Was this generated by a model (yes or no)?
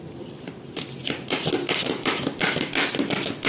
no